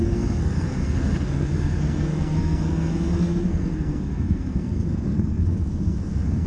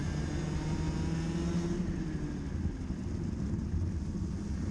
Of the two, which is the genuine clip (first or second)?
second